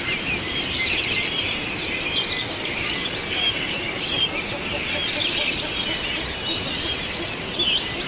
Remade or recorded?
recorded